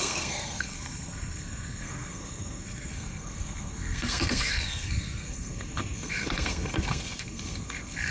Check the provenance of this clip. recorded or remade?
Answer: remade